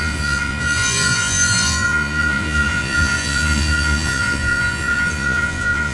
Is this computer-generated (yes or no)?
yes